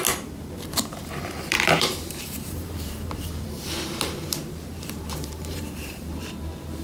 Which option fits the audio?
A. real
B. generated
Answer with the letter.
B